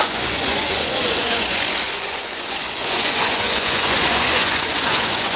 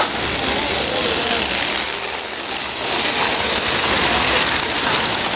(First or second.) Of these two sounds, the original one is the second